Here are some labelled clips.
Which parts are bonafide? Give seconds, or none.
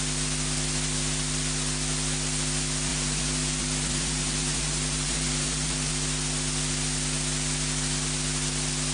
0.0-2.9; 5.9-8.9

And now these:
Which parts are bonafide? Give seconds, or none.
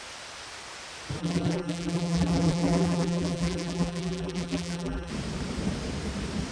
0.0-1.2; 5.1-6.5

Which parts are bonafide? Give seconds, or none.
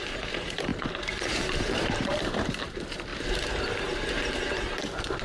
none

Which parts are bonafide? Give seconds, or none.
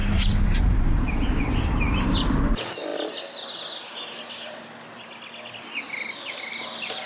2.4-7.1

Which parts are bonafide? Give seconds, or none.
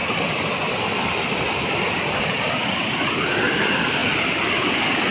0.0-0.8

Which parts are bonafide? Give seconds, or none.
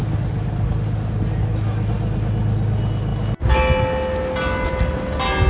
0.0-5.5